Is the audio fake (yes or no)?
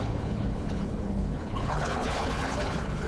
yes